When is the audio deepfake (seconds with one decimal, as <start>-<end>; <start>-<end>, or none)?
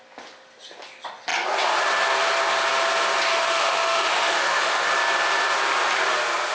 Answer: 3.3-4.9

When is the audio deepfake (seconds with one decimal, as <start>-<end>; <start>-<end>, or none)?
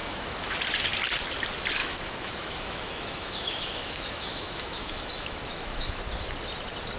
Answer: 0.0-0.6; 1.8-6.0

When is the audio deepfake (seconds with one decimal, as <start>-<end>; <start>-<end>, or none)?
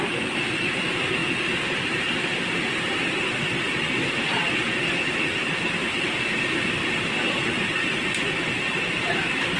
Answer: none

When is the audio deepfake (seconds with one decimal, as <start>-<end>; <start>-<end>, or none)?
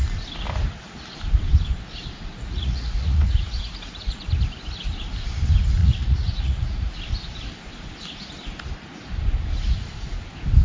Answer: 2.3-4.2; 5.8-6.9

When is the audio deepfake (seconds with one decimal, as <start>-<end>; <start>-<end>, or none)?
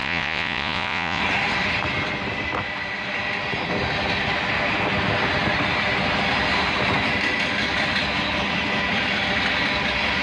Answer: 0.0-1.2